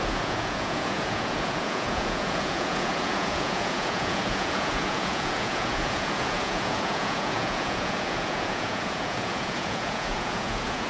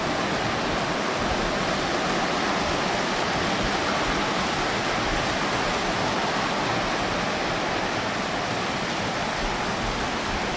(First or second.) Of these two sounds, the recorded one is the second